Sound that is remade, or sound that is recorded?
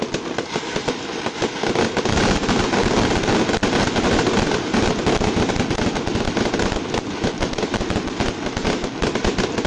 recorded